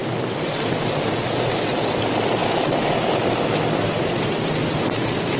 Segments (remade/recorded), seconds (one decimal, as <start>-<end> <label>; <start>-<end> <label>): 0.0-2.4 recorded; 2.4-3.2 remade; 3.2-5.4 recorded